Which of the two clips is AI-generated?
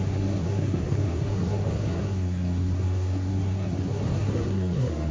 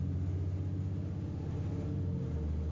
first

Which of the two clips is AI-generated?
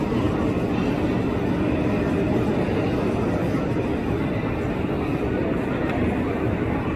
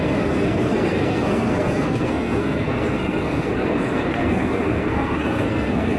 second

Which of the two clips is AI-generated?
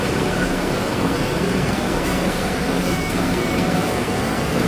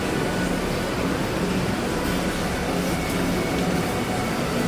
first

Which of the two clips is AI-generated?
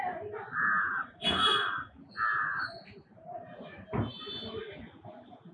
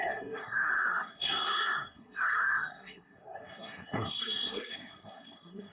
second